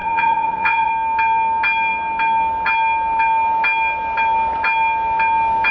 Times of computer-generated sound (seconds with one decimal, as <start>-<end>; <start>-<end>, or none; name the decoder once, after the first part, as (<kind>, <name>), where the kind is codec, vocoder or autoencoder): 0.0-0.9 (vocoder, Vocos)